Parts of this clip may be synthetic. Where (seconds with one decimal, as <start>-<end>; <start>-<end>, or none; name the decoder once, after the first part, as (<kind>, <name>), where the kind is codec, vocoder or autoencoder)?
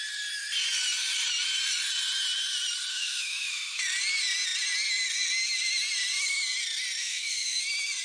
2.9-3.8 (autoencoder, DAC-VAE); 7.0-7.6